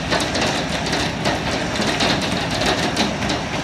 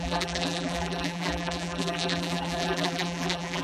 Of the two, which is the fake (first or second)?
second